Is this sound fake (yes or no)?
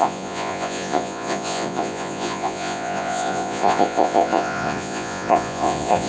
yes